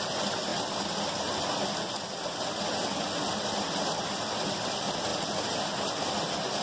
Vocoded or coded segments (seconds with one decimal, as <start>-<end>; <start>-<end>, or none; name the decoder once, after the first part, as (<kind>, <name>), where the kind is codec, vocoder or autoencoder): none